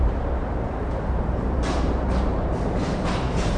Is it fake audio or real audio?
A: fake